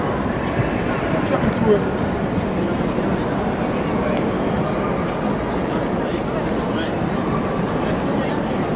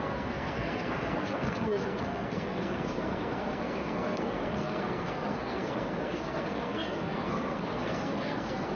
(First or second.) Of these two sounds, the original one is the first